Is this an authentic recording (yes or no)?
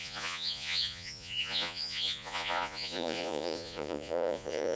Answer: no